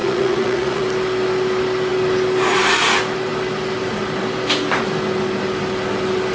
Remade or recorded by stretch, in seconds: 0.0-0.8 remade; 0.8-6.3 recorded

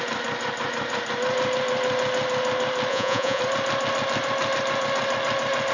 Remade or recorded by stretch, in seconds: 0.0-2.9 recorded; 2.9-3.4 remade; 3.4-5.7 recorded

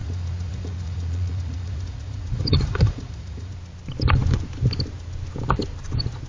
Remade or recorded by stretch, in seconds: 0.0-3.5 remade; 3.5-6.3 recorded

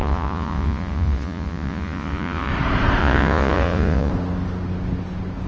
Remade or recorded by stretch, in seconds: 0.0-2.5 remade; 2.5-3.0 recorded; 3.0-4.1 remade; 4.1-5.5 recorded

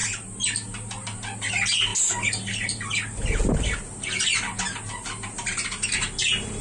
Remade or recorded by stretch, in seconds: 0.0-6.6 recorded

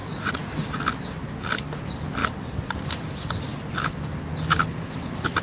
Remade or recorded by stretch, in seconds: 0.0-0.6 remade; 0.6-5.4 recorded

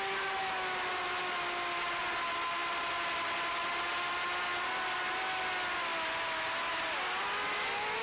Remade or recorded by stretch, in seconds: 0.0-8.0 recorded